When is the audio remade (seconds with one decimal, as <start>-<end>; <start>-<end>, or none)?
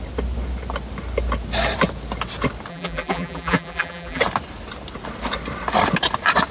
2.7-4.2